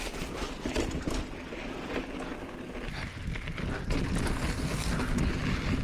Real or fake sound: real